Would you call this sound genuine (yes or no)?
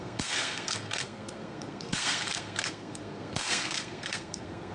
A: no